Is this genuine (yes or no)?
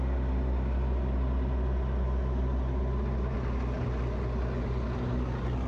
yes